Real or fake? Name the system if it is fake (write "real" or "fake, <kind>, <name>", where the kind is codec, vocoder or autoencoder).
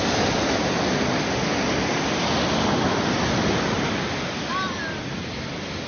real